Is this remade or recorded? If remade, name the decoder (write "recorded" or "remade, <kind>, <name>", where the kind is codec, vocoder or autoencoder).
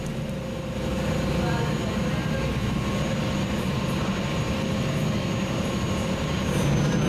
recorded